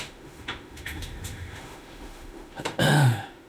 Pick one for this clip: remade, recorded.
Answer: remade